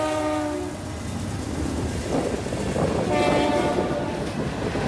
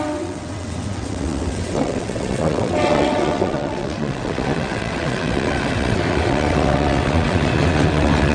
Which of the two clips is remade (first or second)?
second